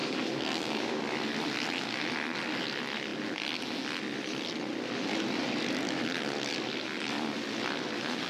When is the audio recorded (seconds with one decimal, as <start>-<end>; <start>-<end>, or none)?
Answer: 1.0-8.3